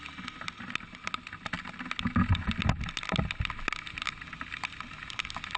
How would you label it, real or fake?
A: real